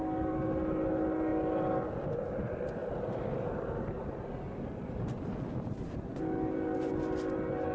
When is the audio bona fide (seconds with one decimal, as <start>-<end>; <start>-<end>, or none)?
0.0-7.7